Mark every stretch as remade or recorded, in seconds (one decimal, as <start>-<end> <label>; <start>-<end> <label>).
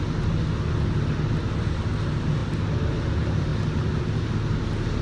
0.0-5.0 recorded